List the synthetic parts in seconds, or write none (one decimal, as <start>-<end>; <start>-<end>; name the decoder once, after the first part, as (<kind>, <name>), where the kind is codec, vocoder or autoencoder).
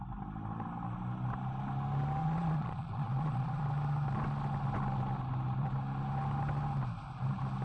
2.2-3.6 (vocoder, Vocos)